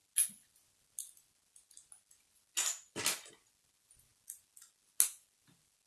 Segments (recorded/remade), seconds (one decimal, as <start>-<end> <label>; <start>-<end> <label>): 0.0-5.9 recorded